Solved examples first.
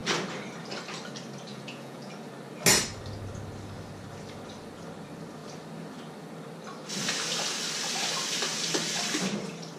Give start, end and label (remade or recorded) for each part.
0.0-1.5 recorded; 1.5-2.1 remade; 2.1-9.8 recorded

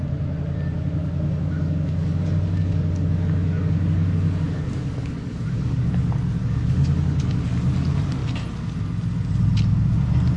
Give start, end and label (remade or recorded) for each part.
0.0-1.0 recorded; 1.0-5.9 remade; 5.9-6.4 recorded; 6.4-7.4 remade; 7.4-10.4 recorded

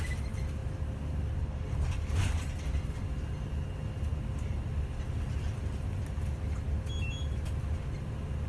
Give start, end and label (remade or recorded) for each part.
0.0-8.5 recorded

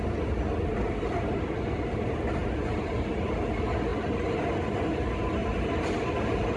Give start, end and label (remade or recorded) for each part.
0.0-0.7 recorded; 0.7-1.4 remade; 1.4-5.4 recorded; 5.4-6.6 remade

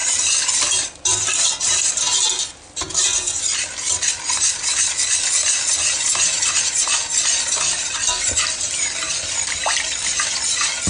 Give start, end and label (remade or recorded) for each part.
0.0-1.6 remade; 1.6-10.9 recorded

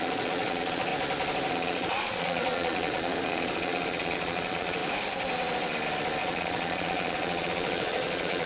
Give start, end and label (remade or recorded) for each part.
0.0-0.9 remade; 0.9-1.5 recorded; 1.5-4.8 remade; 4.8-6.2 recorded; 6.2-8.5 remade

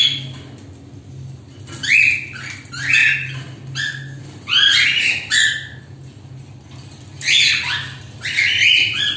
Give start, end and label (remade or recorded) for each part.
0.0-9.2 remade

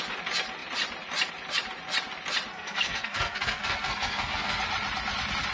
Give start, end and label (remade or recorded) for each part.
0.0-2.5 recorded; 2.5-4.6 remade; 4.6-5.5 recorded